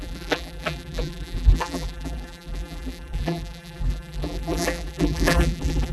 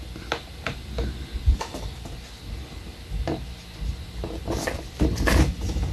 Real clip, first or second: second